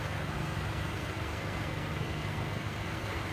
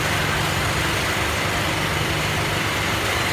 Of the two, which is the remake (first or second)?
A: first